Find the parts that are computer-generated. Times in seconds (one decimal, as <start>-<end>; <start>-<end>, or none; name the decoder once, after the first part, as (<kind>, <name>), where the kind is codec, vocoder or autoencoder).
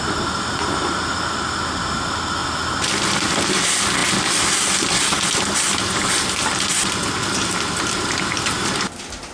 none